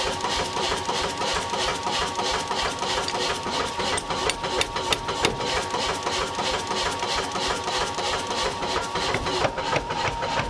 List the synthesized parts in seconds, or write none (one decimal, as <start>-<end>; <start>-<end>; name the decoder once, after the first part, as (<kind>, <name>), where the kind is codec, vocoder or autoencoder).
0.0-1.7 (vocoder, BigVGAN v2); 2.6-4.2; 7.7-10.5